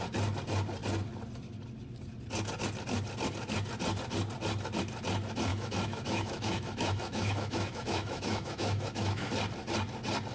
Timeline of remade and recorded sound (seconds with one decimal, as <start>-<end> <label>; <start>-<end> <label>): 0.0-5.5 recorded; 5.5-9.3 remade; 9.3-10.3 recorded